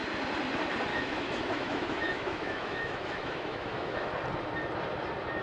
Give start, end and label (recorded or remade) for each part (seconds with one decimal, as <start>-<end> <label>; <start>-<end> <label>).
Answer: 0.0-0.9 recorded; 0.9-4.1 remade; 4.1-5.4 recorded